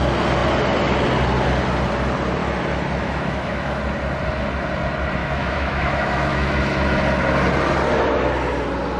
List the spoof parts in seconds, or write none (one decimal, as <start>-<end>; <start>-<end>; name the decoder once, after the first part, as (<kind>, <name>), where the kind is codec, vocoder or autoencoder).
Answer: 2.4-3.8 (autoencoder, DAC-VAE); 5.2-6.6